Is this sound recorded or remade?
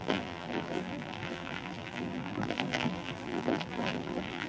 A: remade